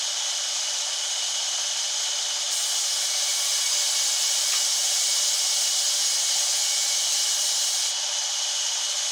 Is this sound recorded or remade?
recorded